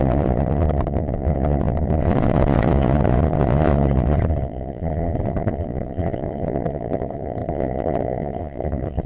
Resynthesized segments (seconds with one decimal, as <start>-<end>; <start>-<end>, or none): 0.0-9.1